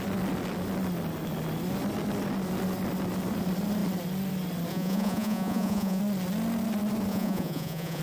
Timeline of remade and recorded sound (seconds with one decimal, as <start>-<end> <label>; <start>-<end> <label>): 0.0-4.7 recorded; 4.7-6.0 remade; 6.0-7.1 recorded; 7.1-8.0 remade